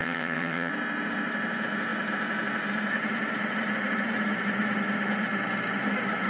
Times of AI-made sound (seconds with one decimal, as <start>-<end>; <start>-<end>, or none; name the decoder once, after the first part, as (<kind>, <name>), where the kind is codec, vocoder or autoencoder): 0.0-0.7 (vocoder, HiFi-GAN)